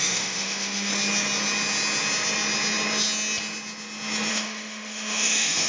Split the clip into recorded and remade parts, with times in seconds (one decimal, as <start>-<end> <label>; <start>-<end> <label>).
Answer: 0.0-0.9 remade; 0.9-4.3 recorded; 4.3-5.7 remade